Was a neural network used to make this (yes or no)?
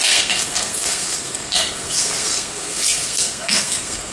yes